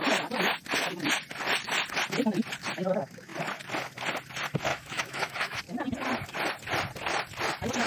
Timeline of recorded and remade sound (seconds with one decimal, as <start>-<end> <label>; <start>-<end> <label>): 0.0-4.7 recorded; 4.7-5.6 remade; 5.6-7.9 recorded